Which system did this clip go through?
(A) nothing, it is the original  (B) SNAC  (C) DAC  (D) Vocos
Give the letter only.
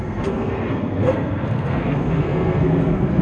B